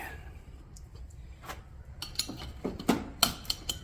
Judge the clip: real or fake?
fake